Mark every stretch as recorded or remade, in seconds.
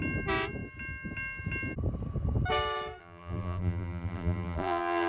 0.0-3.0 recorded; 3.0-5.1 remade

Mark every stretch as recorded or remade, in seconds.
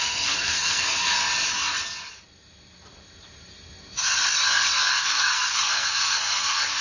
0.0-1.2 remade; 1.2-4.9 recorded; 4.9-6.8 remade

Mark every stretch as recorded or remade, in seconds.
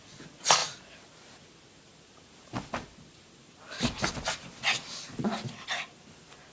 0.0-6.5 recorded